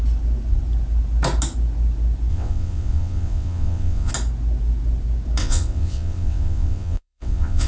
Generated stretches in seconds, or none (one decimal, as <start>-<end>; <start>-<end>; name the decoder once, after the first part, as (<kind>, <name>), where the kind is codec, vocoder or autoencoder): 2.3-4.1 (vocoder, WaveNeXt); 5.4-7.7